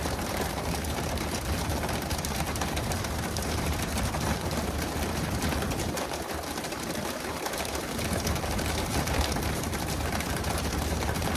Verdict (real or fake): fake